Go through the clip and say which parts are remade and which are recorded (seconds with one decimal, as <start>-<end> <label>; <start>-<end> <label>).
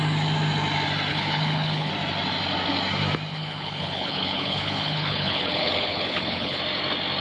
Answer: 0.0-1.1 recorded; 1.1-1.9 remade; 1.9-3.3 recorded; 3.3-6.6 remade; 6.6-7.2 recorded